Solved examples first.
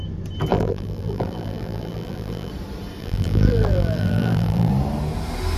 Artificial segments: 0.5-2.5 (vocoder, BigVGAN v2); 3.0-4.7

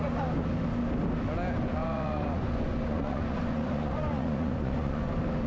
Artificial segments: 1.8-5.1 (vocoder, Vocos)

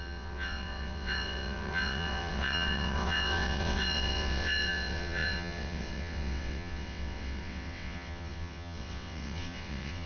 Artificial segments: 0.0-10.1 (vocoder, WaveNeXt)

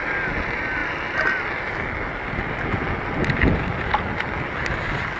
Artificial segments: none